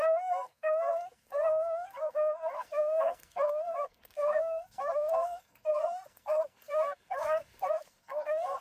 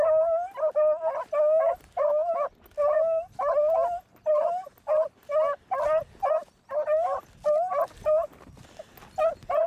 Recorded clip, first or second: second